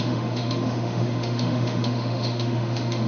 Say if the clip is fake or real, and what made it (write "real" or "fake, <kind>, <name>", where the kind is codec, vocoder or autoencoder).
fake, autoencoder, DAC-VAE